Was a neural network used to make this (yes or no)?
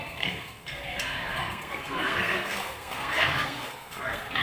yes